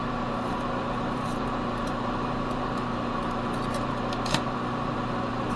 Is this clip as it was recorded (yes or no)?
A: no